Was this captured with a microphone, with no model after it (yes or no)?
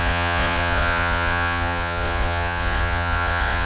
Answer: no